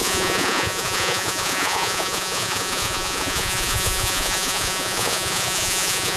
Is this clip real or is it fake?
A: fake